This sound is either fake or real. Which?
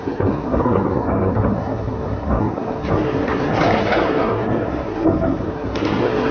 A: fake